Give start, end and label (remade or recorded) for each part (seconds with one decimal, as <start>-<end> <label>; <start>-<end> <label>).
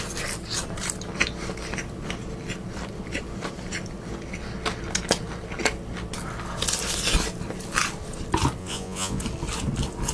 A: 0.0-8.6 recorded; 8.6-9.2 remade; 9.2-10.1 recorded